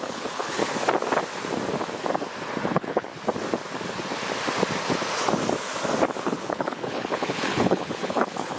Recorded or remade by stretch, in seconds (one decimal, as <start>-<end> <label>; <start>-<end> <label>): 0.0-0.6 remade; 0.6-2.7 recorded; 2.7-3.1 remade; 3.1-6.2 recorded; 6.2-8.6 remade